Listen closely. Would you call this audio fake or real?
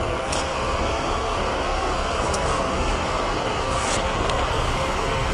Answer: fake